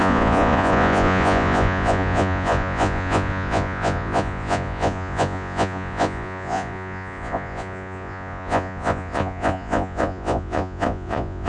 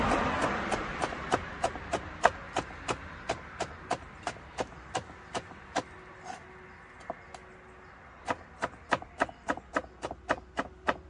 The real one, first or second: second